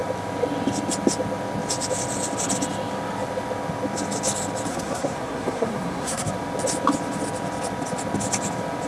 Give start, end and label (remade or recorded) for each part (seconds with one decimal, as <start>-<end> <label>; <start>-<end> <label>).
0.0-4.7 recorded; 4.7-6.3 remade; 6.3-8.9 recorded